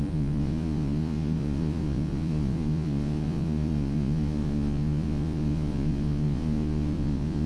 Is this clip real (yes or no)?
no